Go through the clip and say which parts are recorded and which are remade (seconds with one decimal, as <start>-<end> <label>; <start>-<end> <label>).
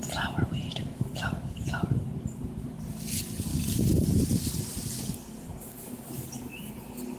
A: 0.0-0.7 recorded; 0.7-1.7 remade; 1.7-3.5 recorded; 3.5-4.2 remade; 4.2-5.1 recorded; 5.1-6.6 remade; 6.6-7.2 recorded